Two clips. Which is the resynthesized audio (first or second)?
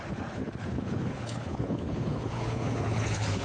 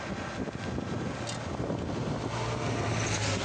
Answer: first